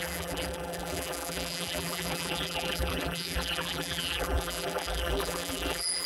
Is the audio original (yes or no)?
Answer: no